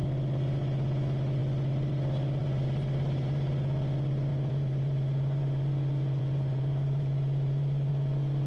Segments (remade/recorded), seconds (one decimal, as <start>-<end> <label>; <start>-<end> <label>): 0.0-2.4 recorded; 2.4-3.5 remade; 3.5-4.3 recorded; 4.3-7.9 remade; 7.9-8.5 recorded